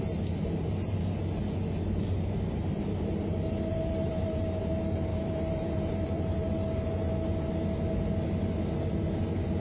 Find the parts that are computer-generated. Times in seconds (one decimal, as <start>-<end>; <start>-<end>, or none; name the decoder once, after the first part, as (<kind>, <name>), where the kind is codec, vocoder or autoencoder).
3.7-4.6 (vocoder, BigVGAN v2); 5.1-6.5